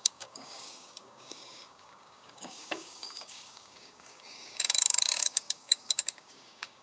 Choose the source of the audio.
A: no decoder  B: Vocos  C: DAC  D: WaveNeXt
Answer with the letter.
C